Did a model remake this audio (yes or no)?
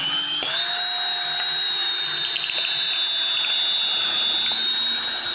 no